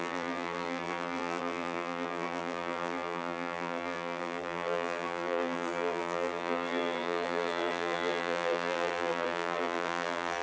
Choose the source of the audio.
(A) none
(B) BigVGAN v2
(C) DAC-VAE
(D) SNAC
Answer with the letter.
B